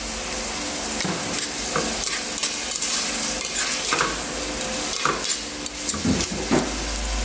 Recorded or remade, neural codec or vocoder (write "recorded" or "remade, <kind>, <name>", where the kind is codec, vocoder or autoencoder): recorded